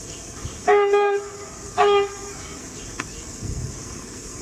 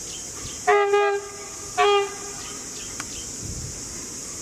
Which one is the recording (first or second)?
second